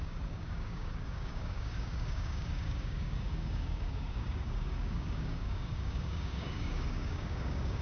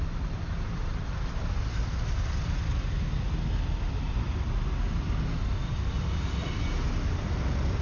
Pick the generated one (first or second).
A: first